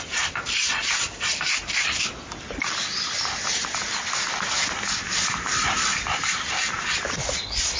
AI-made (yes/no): yes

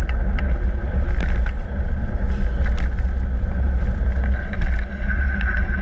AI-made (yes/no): no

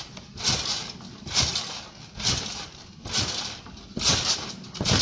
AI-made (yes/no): no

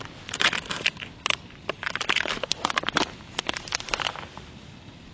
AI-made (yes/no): no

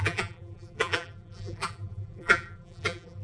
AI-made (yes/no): yes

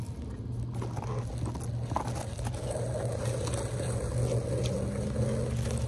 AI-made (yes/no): no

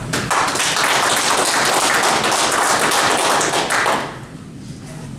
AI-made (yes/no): no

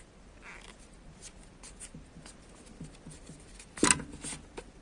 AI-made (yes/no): no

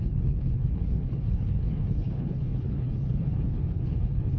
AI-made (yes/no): yes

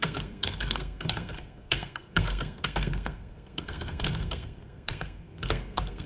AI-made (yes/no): yes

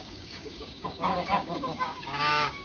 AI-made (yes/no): yes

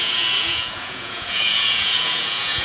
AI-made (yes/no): yes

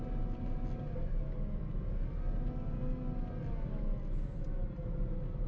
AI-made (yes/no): no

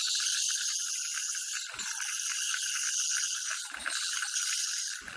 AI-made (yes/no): no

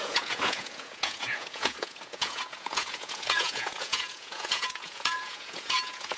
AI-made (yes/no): yes